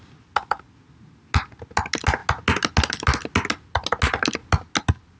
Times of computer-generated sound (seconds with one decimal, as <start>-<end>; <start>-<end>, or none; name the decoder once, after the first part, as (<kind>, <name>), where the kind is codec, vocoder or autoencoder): none